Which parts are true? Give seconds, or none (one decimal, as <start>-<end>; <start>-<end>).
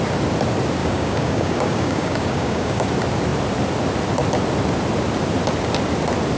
0.0-0.8; 2.9-6.4